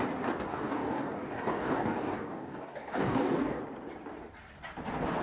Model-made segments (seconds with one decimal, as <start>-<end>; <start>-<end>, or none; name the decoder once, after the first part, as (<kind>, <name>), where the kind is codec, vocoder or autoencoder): 0.5-3.6 (codec, DAC)